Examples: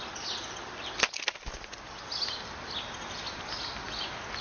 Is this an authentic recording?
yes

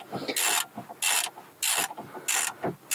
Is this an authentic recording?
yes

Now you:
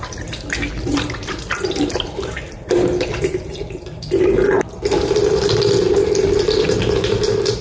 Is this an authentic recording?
no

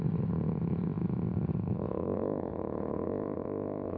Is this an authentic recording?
no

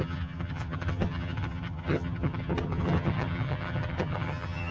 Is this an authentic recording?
no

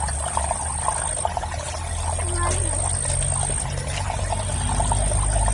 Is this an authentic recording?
yes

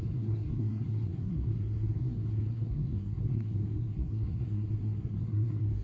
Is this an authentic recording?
no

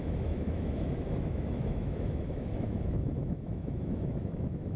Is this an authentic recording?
no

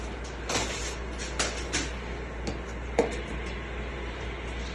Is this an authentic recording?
yes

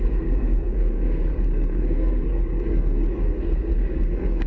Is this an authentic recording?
no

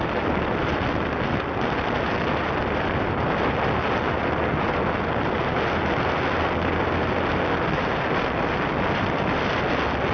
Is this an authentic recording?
yes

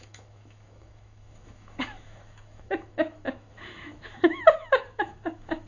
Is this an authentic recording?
no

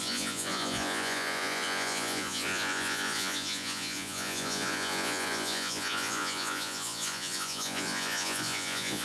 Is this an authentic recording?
no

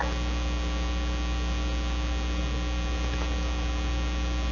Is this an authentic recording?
yes